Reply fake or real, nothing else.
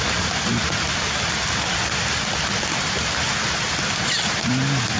real